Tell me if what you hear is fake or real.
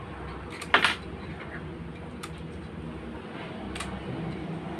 real